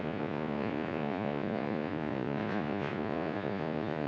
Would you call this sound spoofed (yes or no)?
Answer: yes